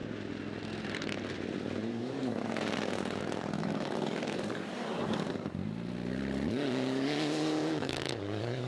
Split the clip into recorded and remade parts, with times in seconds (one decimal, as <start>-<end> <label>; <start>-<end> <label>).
0.0-1.9 recorded; 1.9-5.6 remade; 5.6-6.5 recorded; 6.5-8.7 remade